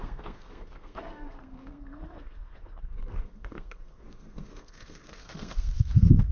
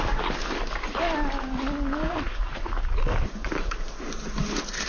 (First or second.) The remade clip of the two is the first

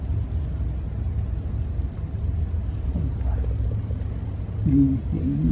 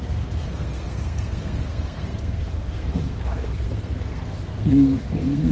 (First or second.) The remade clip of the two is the second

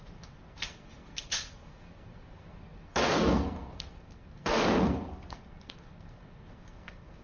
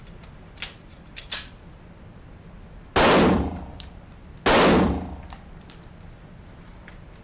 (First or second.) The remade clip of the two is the first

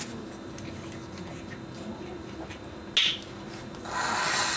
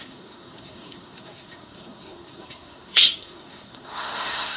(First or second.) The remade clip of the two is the second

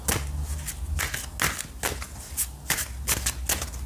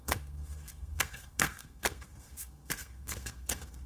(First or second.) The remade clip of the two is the second